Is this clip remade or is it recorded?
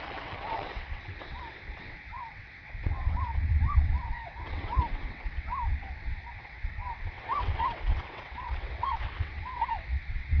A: remade